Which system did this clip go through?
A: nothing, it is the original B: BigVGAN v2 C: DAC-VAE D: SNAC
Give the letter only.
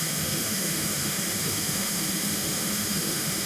C